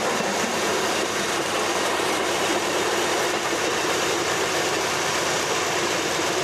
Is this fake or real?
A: fake